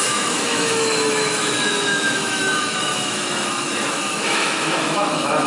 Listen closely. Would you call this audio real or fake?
fake